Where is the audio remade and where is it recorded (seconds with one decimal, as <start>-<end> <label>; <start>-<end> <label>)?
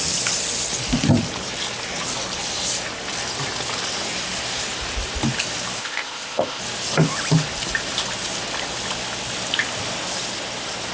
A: 0.0-5.8 recorded; 5.8-6.6 remade; 6.6-10.9 recorded